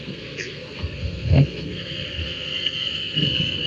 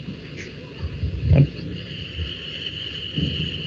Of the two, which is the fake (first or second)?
first